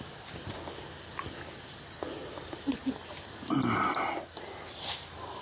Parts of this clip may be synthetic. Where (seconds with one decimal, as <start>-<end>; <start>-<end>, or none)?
none